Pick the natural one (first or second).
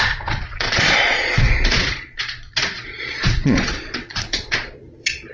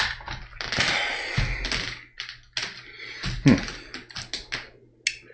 second